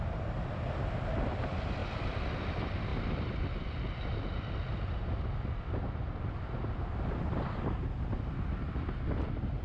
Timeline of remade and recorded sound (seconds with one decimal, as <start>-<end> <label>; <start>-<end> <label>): 0.0-9.6 recorded